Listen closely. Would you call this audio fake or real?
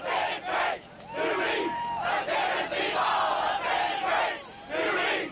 real